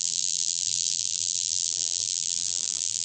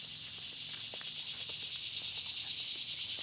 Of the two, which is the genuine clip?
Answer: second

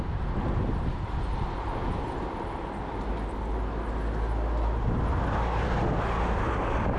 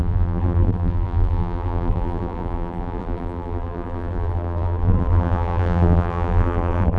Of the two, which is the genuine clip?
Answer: first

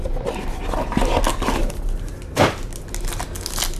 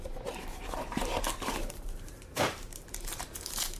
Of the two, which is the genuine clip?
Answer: first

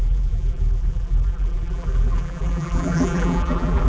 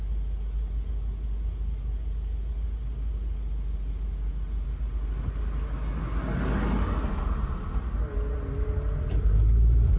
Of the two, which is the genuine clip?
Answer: second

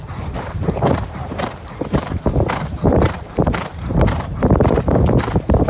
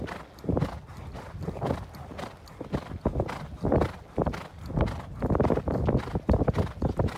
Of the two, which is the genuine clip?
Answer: second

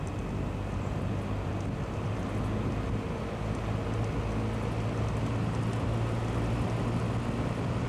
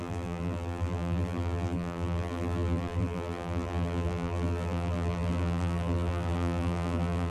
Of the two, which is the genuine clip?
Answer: first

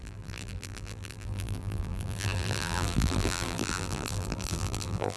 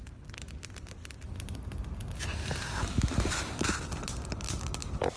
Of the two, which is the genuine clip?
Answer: second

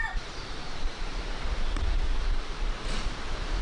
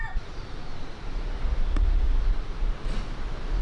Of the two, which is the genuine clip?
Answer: second